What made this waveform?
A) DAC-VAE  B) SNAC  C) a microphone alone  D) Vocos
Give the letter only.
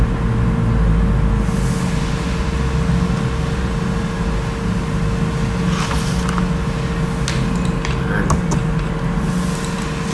C